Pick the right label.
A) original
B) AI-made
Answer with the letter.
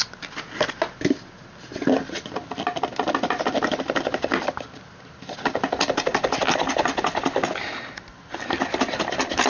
A